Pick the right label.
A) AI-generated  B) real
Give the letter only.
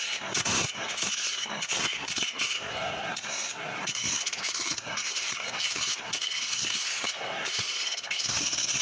A